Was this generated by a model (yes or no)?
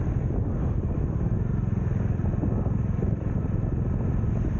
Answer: no